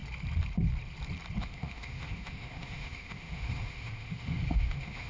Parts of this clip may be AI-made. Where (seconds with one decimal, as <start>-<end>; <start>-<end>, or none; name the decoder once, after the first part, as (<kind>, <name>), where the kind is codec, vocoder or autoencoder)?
1.4-5.1 (autoencoder, DAC-VAE)